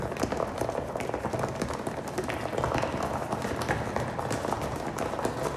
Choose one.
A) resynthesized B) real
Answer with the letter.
A